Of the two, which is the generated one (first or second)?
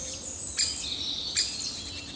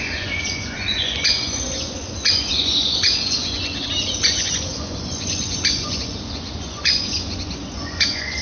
second